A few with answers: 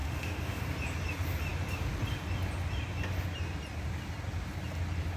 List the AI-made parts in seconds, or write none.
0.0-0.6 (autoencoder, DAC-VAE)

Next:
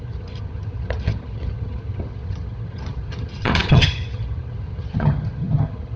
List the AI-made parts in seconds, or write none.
0.0-6.0 (vocoder, HiFi-GAN)

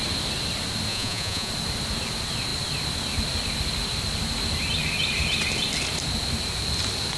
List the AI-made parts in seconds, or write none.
0.9-1.5 (vocoder, Vocos)

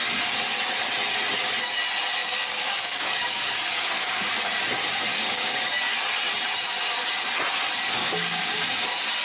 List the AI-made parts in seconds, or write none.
2.2-4.3 (codec, DAC); 5.1-5.7; 8.0-8.5

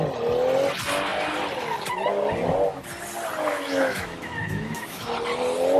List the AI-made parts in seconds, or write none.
3.5-5.1 (autoencoder, DAC-VAE)